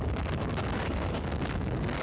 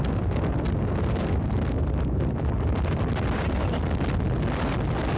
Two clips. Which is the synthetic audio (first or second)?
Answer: first